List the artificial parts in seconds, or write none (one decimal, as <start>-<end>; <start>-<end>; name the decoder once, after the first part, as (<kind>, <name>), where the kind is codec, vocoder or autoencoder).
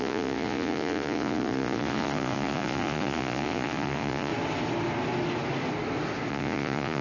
0.0-4.3 (vocoder, Vocos); 6.3-7.0